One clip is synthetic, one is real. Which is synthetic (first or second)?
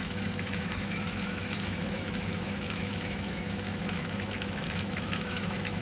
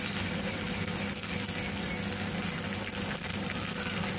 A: first